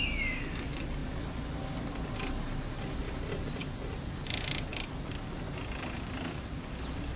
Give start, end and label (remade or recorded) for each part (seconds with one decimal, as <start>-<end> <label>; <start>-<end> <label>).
0.0-7.2 recorded